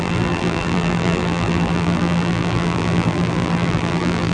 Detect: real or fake fake